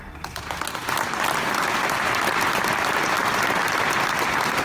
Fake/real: real